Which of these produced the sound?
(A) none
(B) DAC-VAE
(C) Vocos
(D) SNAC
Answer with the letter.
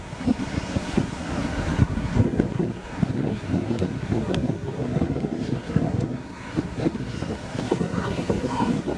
D